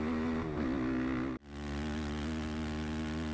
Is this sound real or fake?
real